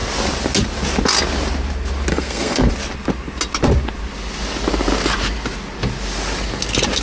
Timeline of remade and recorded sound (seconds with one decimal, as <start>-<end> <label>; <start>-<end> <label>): 0.0-2.1 recorded; 2.1-2.7 remade; 2.7-7.0 recorded